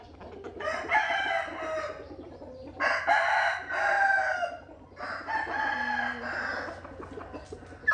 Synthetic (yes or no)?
no